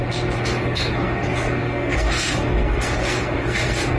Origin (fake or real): fake